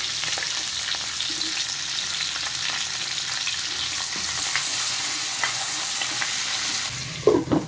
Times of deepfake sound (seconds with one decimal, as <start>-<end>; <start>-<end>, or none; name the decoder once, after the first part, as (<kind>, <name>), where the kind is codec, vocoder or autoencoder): 4.7-5.8 (vocoder, Vocos)